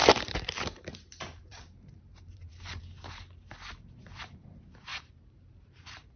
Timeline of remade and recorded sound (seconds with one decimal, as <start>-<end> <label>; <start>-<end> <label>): 0.0-2.8 remade; 2.8-4.9 recorded; 4.9-6.2 remade